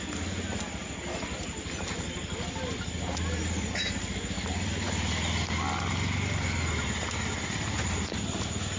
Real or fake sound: real